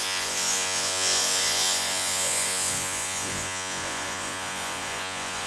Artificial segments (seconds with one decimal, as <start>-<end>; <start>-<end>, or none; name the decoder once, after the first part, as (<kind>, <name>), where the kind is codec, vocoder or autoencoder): 0.0-5.5 (vocoder, Vocos)